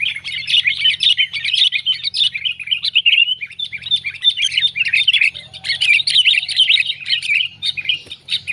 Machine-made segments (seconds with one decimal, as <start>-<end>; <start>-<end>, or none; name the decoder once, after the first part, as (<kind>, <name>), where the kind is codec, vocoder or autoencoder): 0.0-8.5 (vocoder, BigVGAN v2)